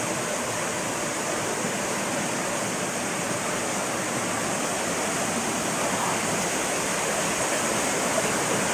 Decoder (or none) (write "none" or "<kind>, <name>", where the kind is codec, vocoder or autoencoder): none